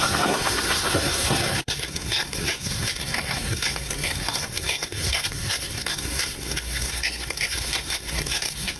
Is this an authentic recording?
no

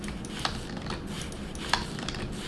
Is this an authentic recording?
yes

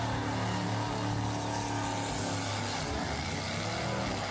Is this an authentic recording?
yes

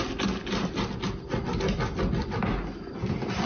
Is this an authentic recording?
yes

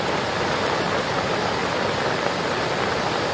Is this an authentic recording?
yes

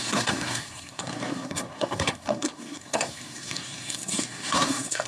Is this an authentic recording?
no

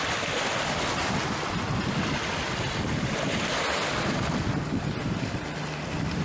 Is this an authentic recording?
yes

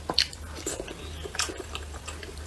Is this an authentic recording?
yes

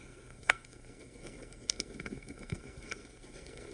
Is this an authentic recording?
no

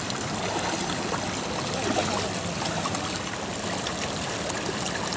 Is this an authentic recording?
yes